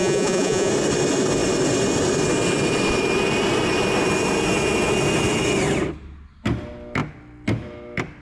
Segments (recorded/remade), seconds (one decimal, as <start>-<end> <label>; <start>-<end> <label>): 0.0-0.7 remade; 0.7-8.2 recorded